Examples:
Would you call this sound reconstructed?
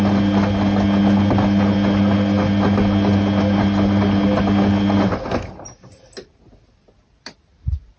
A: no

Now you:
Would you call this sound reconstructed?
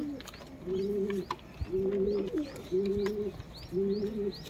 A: no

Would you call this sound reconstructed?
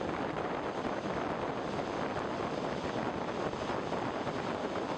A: no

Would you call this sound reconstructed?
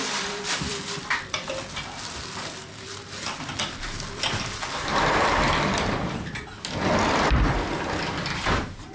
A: yes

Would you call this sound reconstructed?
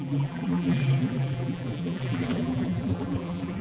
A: yes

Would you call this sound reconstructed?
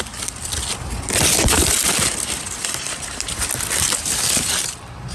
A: yes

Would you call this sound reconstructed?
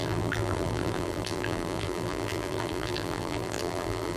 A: yes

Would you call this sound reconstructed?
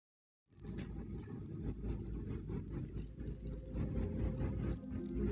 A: no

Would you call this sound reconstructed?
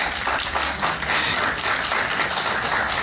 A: no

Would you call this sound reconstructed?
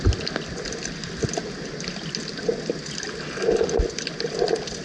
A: no